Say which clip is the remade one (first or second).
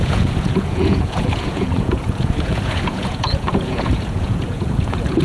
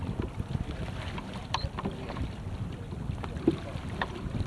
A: first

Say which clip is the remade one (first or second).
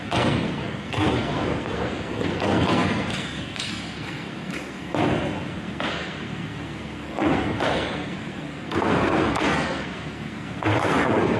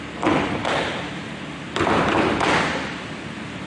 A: first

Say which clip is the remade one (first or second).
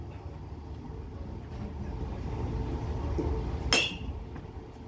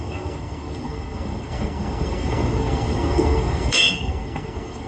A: second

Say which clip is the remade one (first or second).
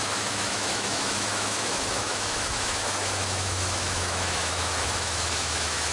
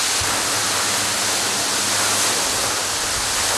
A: first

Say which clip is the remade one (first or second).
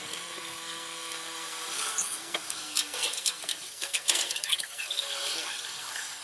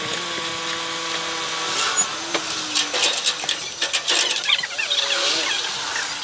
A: first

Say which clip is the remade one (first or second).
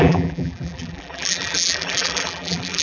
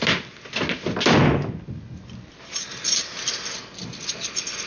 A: first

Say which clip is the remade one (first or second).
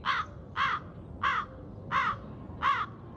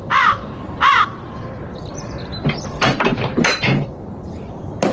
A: second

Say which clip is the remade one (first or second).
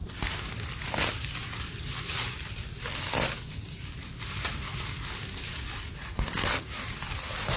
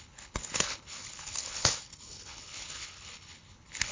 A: second